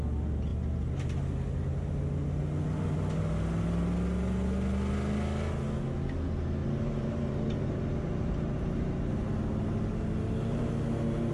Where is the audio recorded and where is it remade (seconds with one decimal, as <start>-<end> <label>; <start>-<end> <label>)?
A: 0.0-6.6 recorded; 6.6-8.9 remade; 8.9-11.3 recorded